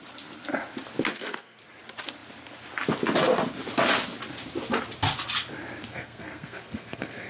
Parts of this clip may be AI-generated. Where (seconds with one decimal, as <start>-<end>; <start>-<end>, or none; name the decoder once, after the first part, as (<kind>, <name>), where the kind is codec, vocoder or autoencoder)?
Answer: 1.1-1.6 (codec, SNAC); 5.9-7.3